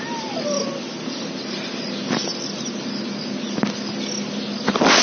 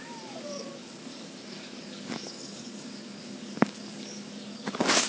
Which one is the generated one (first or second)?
second